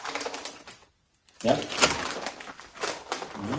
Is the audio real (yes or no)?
yes